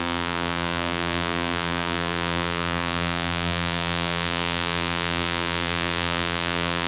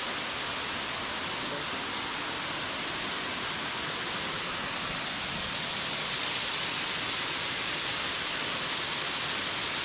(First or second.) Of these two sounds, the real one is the second